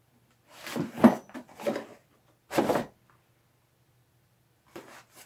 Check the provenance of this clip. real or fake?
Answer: real